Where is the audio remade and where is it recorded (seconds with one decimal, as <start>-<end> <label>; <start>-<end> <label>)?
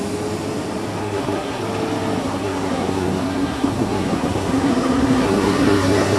0.0-1.0 recorded; 1.0-1.6 remade; 1.6-2.2 recorded; 2.2-6.2 remade